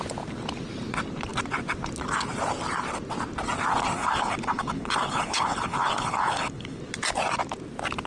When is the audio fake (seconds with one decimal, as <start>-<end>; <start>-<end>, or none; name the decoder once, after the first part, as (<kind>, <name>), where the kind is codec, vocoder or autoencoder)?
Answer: 4.0-6.8 (codec, HILCodec)